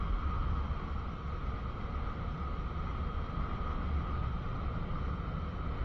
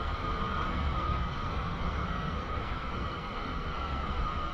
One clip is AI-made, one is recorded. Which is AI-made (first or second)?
second